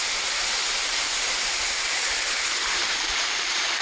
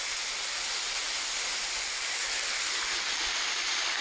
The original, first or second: second